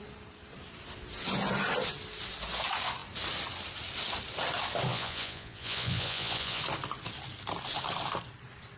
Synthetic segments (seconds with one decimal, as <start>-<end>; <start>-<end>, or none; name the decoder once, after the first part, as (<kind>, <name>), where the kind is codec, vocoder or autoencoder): 4.9-6.6 (vocoder, Vocos)